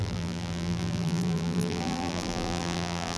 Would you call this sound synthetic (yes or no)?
yes